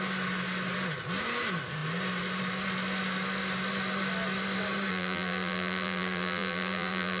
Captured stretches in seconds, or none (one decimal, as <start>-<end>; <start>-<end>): 0.0-4.9